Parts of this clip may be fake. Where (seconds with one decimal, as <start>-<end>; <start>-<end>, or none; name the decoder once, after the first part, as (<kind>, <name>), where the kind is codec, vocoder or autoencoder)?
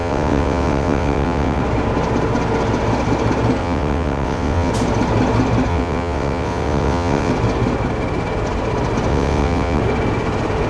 0.0-1.6 (vocoder, WaveNeXt); 3.6-4.7; 5.7-7.3; 9.1-9.8